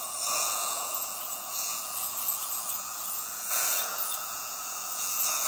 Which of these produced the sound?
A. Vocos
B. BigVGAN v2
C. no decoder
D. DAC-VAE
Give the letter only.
A